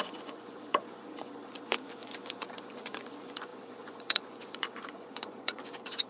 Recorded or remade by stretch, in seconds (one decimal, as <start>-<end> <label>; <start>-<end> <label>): 0.0-6.1 remade